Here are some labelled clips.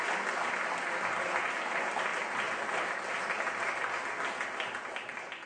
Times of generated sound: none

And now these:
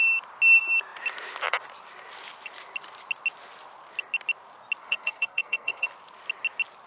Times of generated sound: 4.8-5.9 (codec, SNAC)